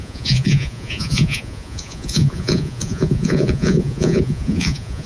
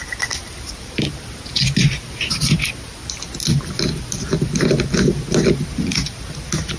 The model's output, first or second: first